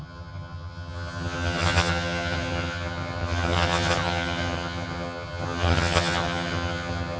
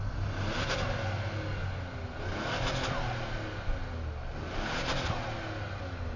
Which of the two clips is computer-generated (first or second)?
first